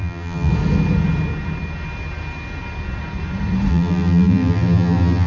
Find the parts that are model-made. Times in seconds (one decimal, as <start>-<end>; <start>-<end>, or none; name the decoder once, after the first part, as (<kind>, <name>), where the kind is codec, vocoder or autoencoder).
0.0-0.5 (vocoder, BigVGAN v2); 3.7-5.3